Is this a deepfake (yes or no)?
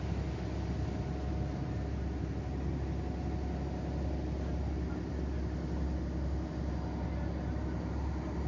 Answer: no